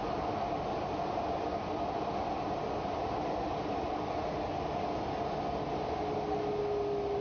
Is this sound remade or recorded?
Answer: recorded